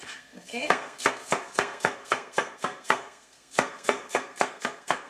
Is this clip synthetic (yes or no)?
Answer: yes